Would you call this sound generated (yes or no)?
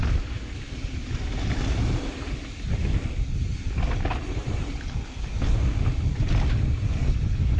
no